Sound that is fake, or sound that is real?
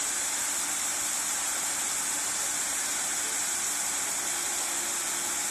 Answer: real